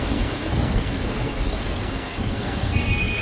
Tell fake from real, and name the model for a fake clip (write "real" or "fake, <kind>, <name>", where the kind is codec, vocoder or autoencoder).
fake, codec, SNAC